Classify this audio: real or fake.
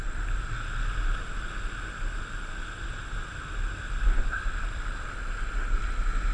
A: real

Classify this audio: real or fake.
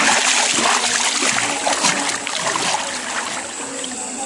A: real